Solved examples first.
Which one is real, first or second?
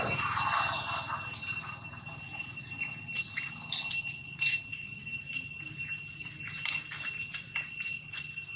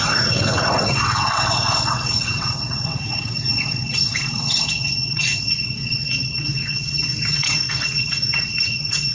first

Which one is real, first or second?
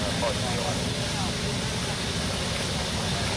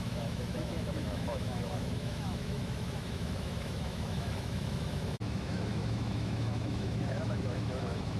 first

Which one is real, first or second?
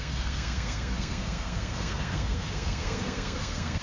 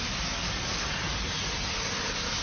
second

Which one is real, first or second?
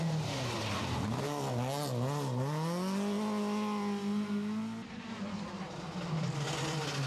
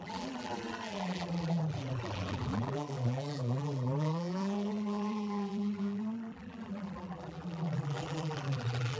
first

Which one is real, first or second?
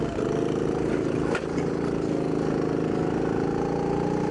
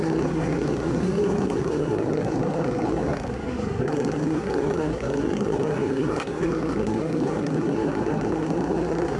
first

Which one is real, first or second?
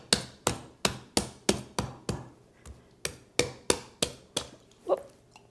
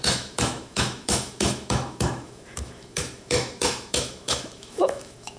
first